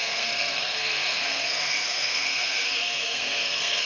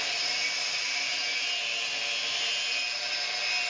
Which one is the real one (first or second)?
second